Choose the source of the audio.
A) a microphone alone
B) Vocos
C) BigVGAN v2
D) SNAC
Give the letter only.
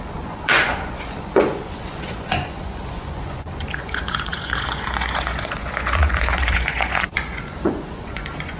B